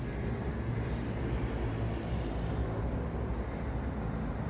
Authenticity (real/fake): real